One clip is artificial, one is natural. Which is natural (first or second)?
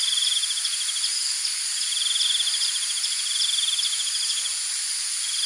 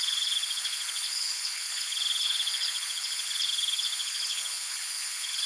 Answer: first